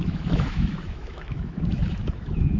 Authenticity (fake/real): fake